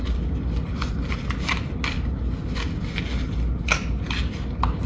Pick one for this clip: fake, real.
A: real